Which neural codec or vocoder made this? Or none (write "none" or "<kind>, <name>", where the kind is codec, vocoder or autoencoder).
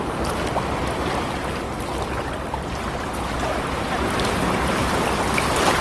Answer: none